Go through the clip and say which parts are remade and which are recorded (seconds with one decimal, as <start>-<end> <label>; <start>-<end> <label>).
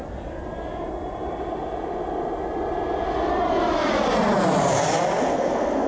0.0-5.2 recorded; 5.2-5.9 remade